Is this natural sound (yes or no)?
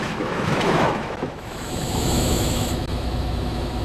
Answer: no